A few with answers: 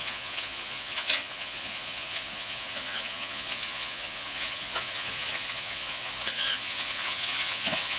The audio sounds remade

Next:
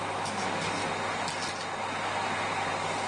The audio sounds recorded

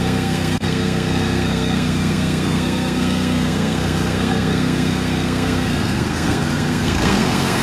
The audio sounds remade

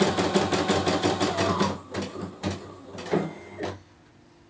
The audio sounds recorded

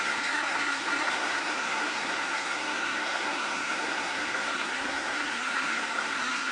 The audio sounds remade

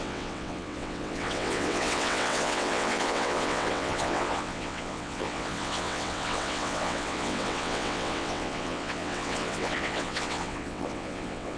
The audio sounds remade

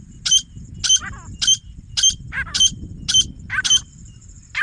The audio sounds recorded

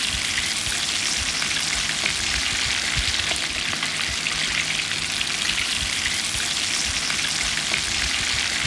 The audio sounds recorded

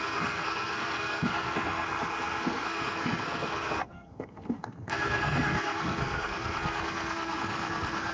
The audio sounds remade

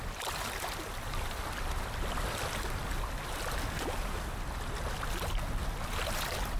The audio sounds recorded